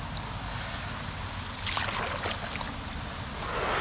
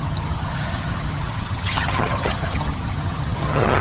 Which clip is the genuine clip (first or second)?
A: first